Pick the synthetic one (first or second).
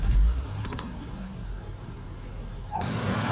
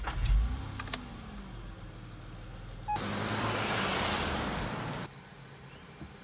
first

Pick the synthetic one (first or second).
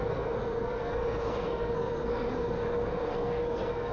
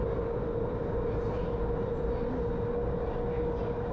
first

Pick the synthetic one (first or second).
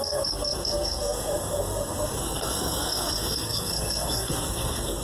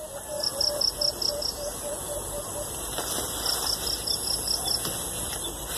first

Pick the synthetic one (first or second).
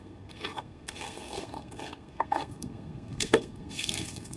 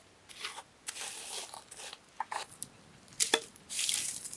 first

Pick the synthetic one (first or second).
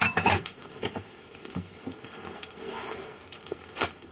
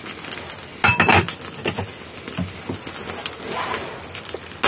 first